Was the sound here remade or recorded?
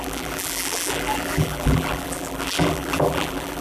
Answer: remade